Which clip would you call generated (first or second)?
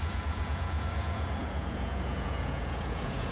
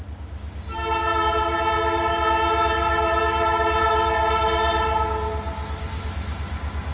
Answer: first